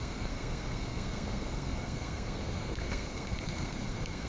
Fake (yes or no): yes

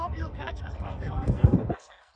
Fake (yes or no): yes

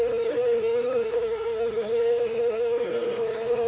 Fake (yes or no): yes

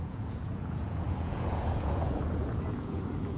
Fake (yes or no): yes